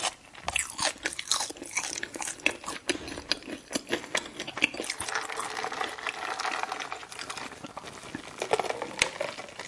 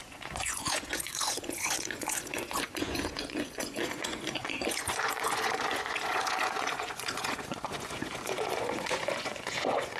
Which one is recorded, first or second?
first